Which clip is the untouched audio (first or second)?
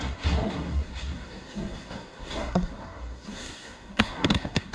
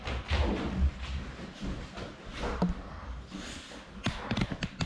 second